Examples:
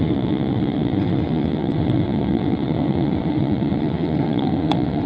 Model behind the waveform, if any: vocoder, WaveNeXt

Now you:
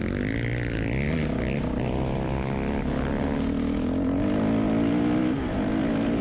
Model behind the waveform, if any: none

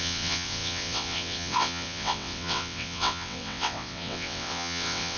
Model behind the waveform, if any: vocoder, WaveNeXt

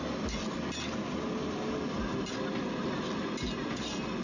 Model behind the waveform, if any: none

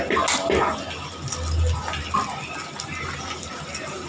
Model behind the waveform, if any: none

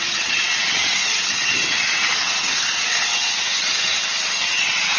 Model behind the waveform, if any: vocoder, WaveNeXt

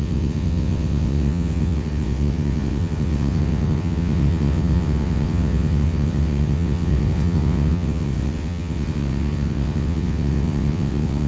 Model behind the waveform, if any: vocoder, WaveNeXt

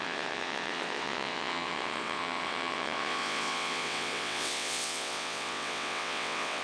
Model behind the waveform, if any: vocoder, WaveNeXt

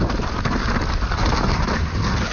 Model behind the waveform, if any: none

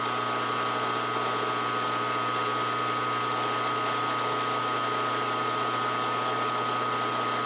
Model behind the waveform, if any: none